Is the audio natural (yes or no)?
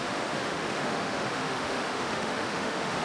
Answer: no